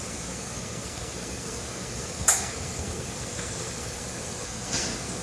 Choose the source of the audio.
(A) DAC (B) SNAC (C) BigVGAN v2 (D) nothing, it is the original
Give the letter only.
B